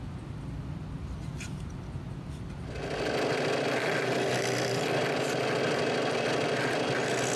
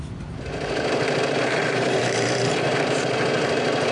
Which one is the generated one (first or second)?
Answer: second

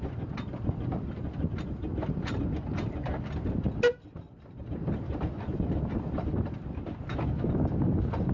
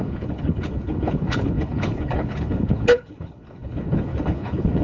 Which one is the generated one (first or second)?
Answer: second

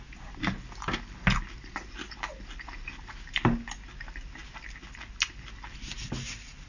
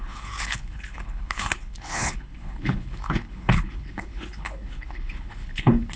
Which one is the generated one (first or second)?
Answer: second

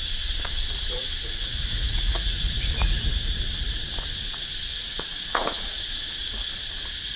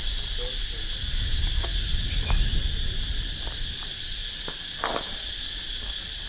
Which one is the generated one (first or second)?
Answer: first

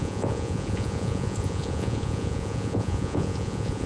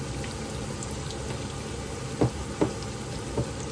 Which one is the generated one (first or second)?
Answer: first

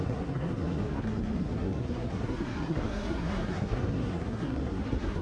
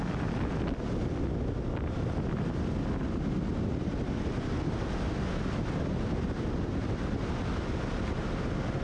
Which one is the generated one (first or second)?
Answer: first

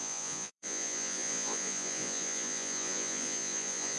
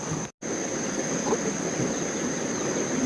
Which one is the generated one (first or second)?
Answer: first